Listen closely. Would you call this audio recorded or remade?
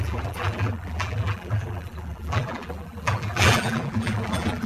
remade